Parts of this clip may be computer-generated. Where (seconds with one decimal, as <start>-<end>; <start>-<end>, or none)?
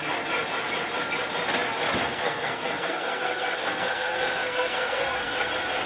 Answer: 2.0-5.5